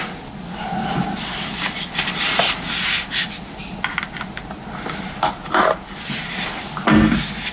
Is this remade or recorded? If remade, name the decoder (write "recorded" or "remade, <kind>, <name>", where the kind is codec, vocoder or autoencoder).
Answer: recorded